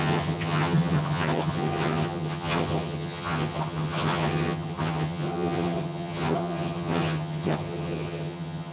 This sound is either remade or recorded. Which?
remade